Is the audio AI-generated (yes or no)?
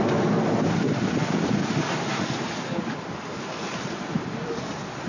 no